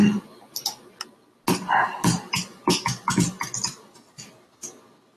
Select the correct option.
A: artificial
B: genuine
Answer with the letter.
B